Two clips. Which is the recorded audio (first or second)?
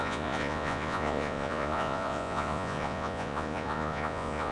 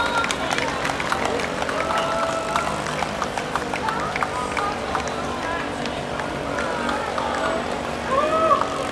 second